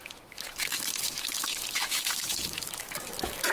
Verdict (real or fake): fake